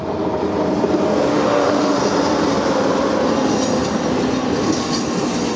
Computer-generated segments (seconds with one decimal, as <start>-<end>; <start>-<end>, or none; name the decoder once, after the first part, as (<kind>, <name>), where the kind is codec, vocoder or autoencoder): 1.3-2.0 (autoencoder, DAC-VAE)